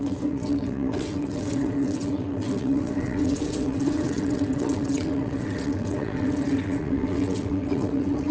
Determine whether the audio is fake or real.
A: fake